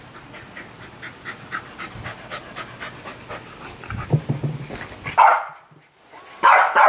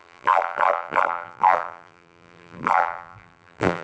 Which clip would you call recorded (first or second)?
first